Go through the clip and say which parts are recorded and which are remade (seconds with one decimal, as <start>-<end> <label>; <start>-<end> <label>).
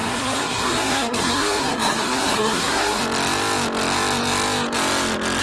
0.0-3.0 remade; 3.0-5.4 recorded